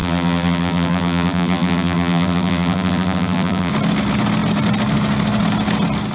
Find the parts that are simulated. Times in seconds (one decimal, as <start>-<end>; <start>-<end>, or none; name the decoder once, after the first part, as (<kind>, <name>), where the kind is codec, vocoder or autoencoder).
0.0-3.7 (vocoder, BigVGAN v2)